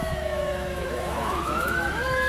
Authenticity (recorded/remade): remade